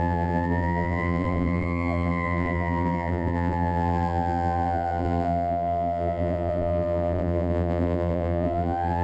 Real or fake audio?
fake